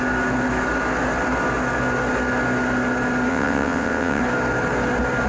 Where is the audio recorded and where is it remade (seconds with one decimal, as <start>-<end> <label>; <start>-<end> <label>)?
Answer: 0.0-3.3 recorded; 3.3-4.2 remade; 4.2-5.3 recorded

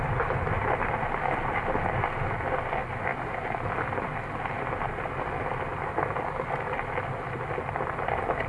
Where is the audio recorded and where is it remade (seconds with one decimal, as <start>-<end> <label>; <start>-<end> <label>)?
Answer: 0.0-8.5 recorded

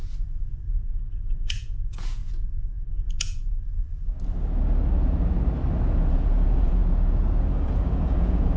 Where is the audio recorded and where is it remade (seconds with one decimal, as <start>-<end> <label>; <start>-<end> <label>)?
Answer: 0.0-0.6 recorded; 0.6-2.2 remade; 2.2-3.2 recorded; 3.2-3.8 remade; 3.8-6.1 recorded; 6.1-6.8 remade; 6.8-7.4 recorded; 7.4-8.6 remade

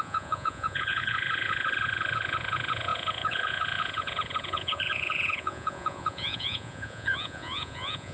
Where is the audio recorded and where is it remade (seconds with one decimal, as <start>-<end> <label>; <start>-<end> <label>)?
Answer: 0.0-8.1 remade

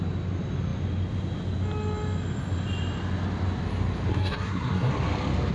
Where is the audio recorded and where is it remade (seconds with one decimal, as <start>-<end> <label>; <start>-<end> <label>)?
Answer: 0.0-4.1 recorded; 4.1-4.9 remade; 4.9-5.5 recorded

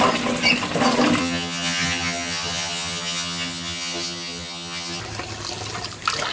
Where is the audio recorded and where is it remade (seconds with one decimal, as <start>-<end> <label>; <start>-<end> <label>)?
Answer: 0.0-1.2 recorded; 1.2-5.0 remade; 5.0-6.3 recorded

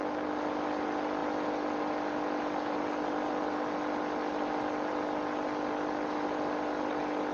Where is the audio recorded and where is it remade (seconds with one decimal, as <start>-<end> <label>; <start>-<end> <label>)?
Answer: 0.0-7.3 recorded